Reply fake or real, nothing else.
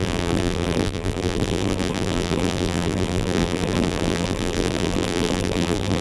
fake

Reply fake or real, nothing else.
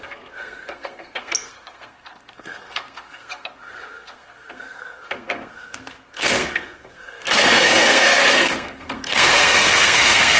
fake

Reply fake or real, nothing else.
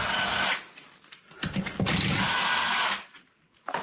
real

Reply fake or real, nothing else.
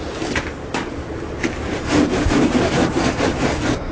real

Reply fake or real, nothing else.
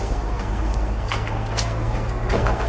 fake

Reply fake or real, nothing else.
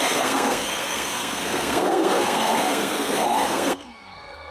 fake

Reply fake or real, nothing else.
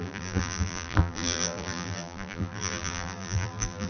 fake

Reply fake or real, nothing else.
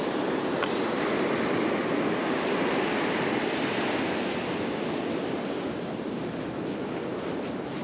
real